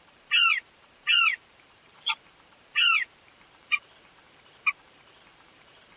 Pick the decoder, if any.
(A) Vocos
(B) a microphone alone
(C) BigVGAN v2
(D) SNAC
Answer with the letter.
C